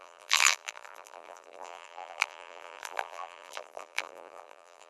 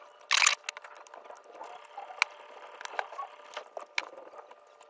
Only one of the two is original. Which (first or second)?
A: second